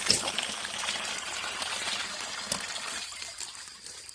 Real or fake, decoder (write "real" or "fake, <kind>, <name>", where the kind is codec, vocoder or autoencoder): real